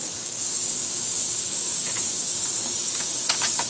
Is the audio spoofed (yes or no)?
yes